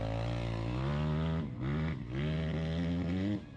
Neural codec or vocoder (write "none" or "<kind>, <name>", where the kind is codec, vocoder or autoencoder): none